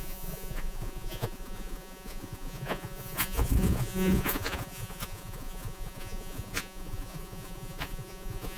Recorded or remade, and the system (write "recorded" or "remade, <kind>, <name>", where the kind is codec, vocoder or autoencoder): remade, vocoder, Vocos